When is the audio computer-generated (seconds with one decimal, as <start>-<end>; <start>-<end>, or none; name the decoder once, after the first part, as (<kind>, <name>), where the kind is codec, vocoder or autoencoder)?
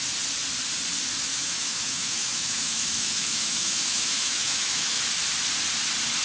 1.3-5.0 (autoencoder, DAC-VAE)